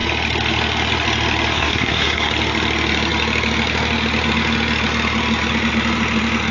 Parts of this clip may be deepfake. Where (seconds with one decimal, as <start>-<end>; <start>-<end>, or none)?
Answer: 1.5-2.3